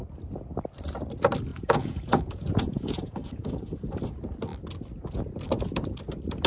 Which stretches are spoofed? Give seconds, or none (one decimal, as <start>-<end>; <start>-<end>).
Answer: 1.5-3.9